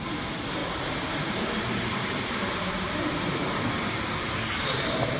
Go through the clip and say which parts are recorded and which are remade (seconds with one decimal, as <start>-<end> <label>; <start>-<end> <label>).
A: 0.0-5.2 remade